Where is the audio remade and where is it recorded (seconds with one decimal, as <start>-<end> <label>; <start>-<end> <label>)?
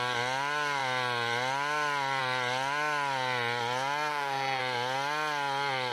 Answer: 0.0-4.1 recorded; 4.1-4.6 remade; 4.6-5.9 recorded